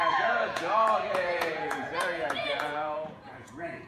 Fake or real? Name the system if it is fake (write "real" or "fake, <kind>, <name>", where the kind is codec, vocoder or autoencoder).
fake, vocoder, Vocos